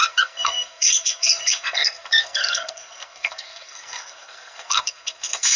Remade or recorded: remade